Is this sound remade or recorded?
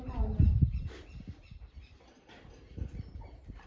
remade